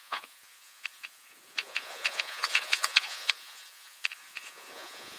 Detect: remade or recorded remade